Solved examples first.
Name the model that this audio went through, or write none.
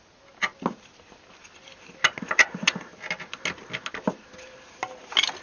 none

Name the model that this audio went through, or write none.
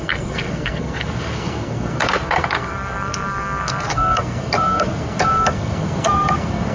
codec, SNAC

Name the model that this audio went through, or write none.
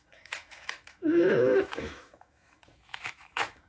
autoencoder, DAC-VAE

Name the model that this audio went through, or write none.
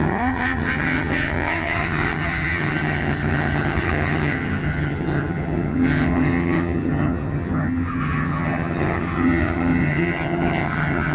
vocoder, HiFi-GAN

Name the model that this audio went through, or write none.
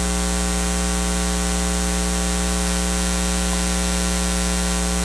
none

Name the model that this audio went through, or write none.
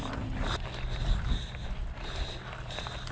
none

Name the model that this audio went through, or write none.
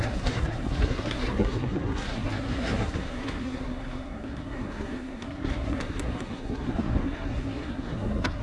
codec, SNAC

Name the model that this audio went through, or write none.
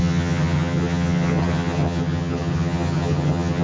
vocoder, HiFi-GAN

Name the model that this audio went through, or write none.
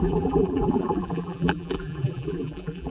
vocoder, BigVGAN v2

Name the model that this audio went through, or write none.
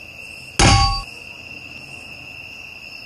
none